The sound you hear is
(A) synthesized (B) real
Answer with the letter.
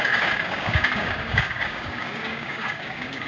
A